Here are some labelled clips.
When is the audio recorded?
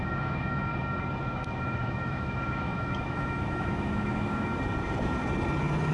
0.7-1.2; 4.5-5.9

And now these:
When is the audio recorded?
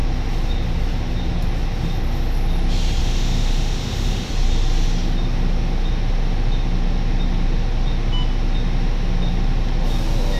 0.0-3.0; 4.3-10.4